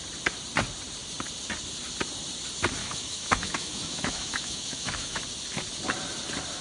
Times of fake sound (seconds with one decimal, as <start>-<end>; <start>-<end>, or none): 2.8-5.2